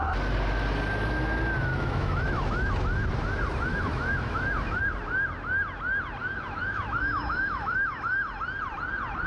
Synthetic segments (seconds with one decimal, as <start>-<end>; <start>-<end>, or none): 1.7-2.7; 3.7-4.8; 6.2-8.0